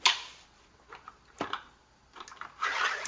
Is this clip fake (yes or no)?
no